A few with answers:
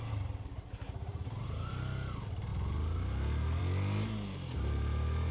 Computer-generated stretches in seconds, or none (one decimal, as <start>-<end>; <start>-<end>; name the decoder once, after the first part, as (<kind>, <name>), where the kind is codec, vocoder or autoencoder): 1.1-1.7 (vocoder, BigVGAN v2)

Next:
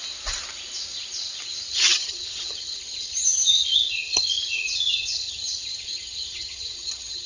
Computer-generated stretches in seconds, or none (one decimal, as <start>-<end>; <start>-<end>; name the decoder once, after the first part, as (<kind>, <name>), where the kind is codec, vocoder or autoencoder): 1.7-7.3 (vocoder, HiFi-GAN)

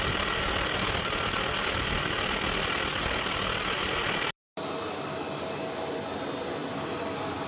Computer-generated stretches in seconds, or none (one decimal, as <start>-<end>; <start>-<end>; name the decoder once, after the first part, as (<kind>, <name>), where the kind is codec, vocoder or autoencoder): none

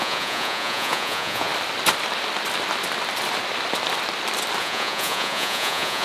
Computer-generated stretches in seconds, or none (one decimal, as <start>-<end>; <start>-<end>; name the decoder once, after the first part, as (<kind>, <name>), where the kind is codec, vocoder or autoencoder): 0.0-1.5 (vocoder, Vocos); 4.6-6.0

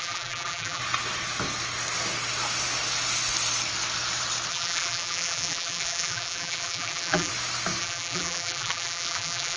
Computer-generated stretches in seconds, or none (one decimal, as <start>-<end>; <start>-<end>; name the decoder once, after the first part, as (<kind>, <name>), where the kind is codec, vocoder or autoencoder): 0.0-0.8 (vocoder, BigVGAN v2); 4.5-7.3; 7.8-9.6

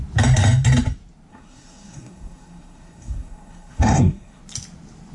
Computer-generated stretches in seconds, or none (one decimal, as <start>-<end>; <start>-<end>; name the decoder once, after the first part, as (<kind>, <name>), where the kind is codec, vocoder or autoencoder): 1.3-4.4 (codec, SNAC)

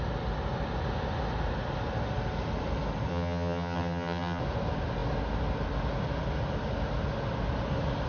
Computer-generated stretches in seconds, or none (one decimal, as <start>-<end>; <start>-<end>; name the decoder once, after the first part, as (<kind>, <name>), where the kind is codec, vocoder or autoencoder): 3.1-4.4 (vocoder, HiFi-GAN)